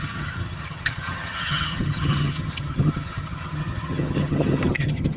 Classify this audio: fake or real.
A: fake